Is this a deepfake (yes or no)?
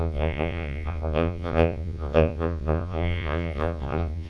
yes